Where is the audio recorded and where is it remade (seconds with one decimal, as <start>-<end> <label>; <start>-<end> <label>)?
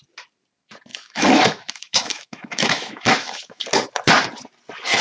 0.0-0.9 recorded; 0.9-3.6 remade; 3.6-5.0 recorded